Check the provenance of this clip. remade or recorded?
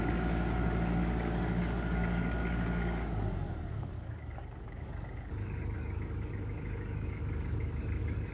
remade